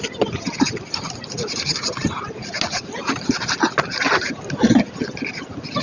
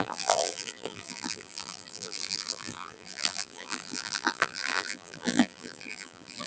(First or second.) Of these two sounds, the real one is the first